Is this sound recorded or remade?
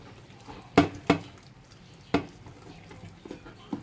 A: recorded